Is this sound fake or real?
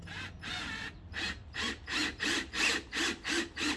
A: real